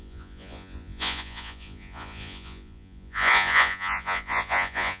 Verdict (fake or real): fake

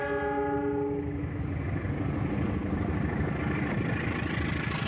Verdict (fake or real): real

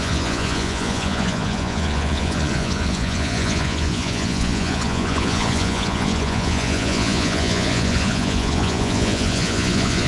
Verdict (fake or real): fake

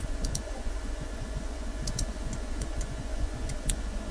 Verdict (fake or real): fake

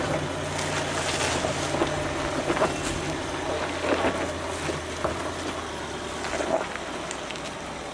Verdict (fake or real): real